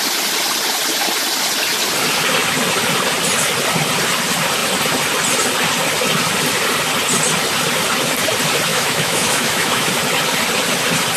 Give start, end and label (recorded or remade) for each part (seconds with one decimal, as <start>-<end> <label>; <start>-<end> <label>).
0.0-8.7 recorded; 8.7-9.9 remade; 9.9-11.2 recorded